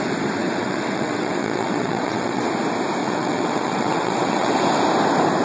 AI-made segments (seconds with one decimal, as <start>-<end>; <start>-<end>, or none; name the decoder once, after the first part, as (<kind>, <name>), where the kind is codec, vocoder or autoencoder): 0.4-2.5 (vocoder, WaveNeXt); 3.0-4.5